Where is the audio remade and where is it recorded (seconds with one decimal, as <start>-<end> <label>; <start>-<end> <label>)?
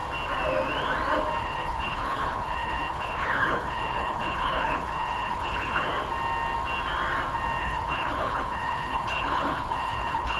0.0-1.4 recorded; 1.4-5.9 remade; 5.9-7.6 recorded; 7.6-10.4 remade